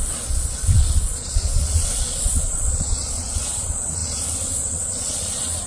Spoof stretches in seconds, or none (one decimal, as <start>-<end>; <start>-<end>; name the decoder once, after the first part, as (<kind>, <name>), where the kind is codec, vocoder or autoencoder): 0.0-5.7 (vocoder, Vocos)